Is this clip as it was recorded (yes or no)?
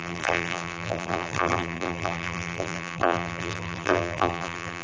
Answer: no